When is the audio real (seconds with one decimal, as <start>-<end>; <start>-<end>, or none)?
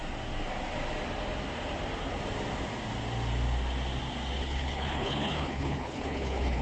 0.0-4.4